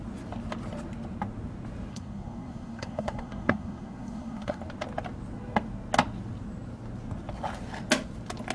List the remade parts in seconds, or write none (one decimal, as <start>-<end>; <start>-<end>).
1.9-4.6